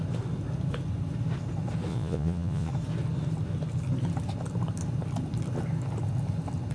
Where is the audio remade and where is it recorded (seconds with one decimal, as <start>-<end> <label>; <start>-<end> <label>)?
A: 0.0-1.9 recorded; 1.9-2.7 remade; 2.7-6.7 recorded